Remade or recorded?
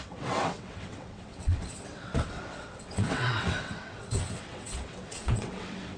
remade